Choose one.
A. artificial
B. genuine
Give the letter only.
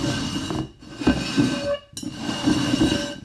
B